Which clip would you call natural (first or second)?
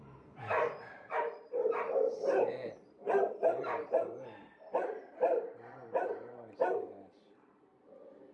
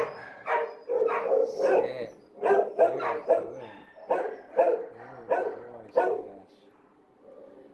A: second